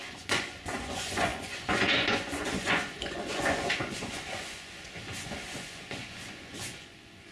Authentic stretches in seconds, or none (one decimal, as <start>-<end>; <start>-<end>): none